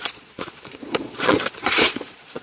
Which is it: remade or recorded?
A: remade